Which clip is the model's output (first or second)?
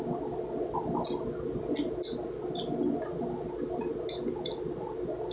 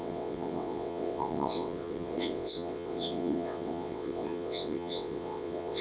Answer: second